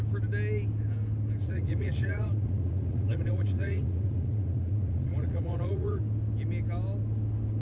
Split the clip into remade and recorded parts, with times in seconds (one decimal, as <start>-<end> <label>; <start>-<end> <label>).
0.0-1.4 recorded; 1.4-6.0 remade; 6.0-7.6 recorded